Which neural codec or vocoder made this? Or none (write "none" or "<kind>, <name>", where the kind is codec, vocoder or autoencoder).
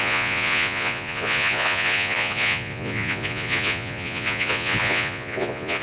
vocoder, Vocos